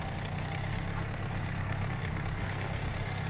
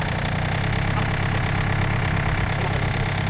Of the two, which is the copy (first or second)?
first